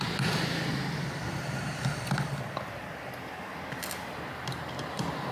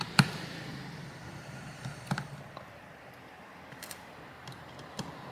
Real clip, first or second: first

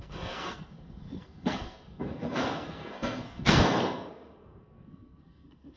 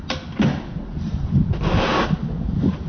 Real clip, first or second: second